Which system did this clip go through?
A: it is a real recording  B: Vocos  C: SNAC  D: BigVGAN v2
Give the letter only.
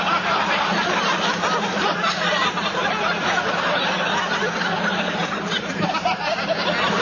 A